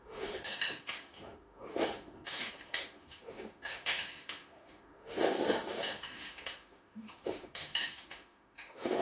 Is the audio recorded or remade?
remade